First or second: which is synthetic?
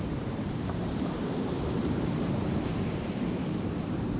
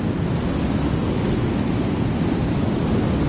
first